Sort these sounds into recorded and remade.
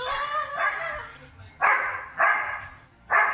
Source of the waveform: recorded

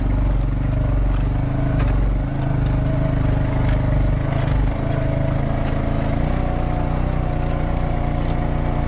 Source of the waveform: recorded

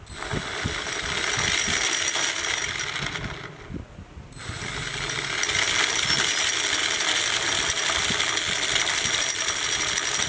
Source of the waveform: recorded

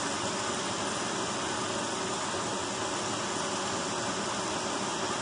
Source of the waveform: recorded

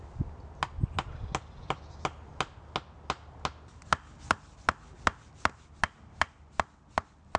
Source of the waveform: recorded